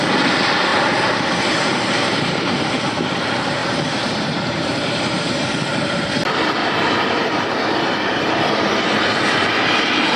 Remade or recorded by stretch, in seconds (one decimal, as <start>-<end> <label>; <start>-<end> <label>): 0.0-0.7 recorded; 0.7-3.0 remade; 3.0-3.6 recorded; 3.6-6.1 remade; 6.1-6.6 recorded; 6.6-7.5 remade; 7.5-10.2 recorded